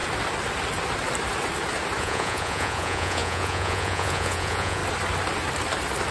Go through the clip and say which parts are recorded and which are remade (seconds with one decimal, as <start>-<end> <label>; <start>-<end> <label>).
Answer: 0.0-2.0 recorded; 2.0-4.8 remade; 4.8-6.1 recorded

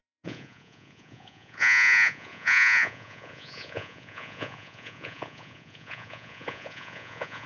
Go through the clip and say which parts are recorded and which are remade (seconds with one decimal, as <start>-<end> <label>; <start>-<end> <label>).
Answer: 0.0-7.5 remade

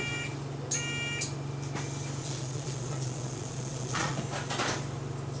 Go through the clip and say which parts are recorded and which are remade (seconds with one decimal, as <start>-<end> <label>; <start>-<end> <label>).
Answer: 0.0-2.2 recorded; 2.2-4.2 remade; 4.2-5.4 recorded

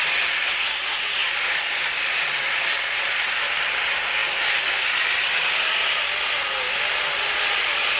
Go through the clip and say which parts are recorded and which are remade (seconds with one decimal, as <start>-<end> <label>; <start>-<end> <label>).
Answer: 0.0-8.0 recorded

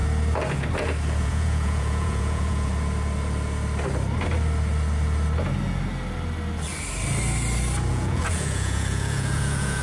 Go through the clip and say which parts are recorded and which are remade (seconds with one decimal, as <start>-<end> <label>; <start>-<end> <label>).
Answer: 0.0-1.2 recorded; 1.2-2.7 remade; 2.7-7.9 recorded; 7.9-9.8 remade

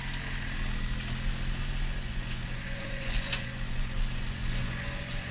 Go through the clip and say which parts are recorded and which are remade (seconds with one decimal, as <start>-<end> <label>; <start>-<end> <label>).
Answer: 0.0-2.0 recorded; 2.0-5.3 remade

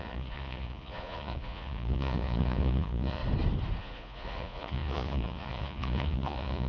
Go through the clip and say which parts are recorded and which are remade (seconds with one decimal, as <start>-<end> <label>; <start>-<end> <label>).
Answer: 0.0-3.2 remade; 3.2-3.8 recorded; 3.8-6.7 remade

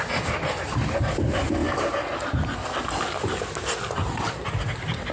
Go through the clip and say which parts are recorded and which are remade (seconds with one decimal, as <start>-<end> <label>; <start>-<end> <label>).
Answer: 0.0-5.1 recorded